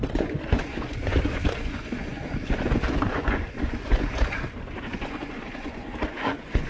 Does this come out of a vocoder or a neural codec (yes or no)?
yes